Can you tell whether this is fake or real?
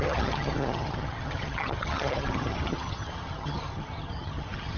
fake